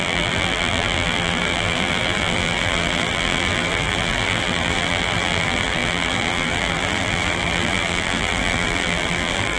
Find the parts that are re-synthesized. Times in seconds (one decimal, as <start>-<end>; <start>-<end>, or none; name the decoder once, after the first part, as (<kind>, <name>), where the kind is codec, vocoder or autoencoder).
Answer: 0.0-9.6 (vocoder, BigVGAN v2)